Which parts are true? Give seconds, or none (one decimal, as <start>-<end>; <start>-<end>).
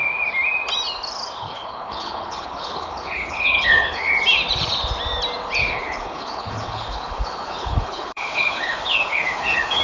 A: 0.0-1.4; 4.1-5.6